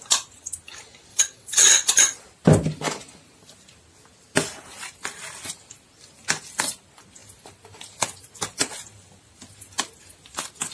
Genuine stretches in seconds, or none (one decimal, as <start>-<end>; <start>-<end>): 0.0-1.1; 1.9-10.7